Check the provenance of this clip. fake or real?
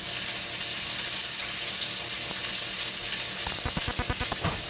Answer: real